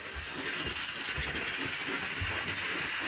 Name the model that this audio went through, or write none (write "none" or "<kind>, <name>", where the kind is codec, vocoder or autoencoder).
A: none